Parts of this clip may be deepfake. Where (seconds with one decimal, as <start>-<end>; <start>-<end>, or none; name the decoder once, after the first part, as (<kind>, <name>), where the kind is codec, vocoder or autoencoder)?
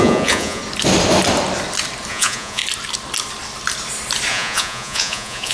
0.0-0.6 (vocoder, Vocos); 2.1-2.6; 4.3-5.5